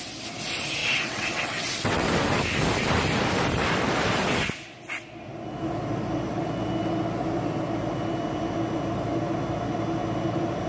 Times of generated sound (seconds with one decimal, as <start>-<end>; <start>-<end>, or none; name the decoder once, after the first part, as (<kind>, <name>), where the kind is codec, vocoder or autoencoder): 0.8-2.1 (vocoder, WaveNeXt)